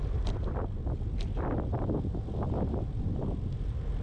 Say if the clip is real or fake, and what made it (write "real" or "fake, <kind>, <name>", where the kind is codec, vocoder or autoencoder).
real